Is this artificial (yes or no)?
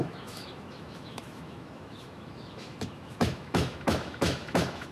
yes